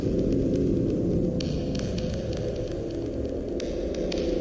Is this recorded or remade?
recorded